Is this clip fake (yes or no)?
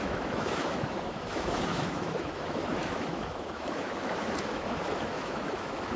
yes